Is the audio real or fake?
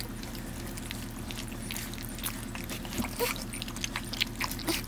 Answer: real